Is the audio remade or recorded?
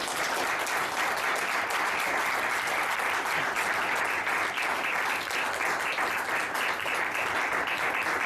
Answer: recorded